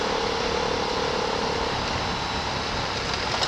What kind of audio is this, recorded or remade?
recorded